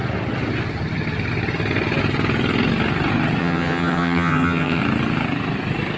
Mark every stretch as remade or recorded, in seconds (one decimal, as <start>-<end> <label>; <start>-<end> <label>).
0.0-3.4 recorded; 3.4-4.8 remade; 4.8-6.0 recorded